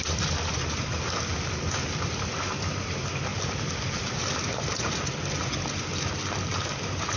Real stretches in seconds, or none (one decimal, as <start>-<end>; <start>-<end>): 0.0-7.2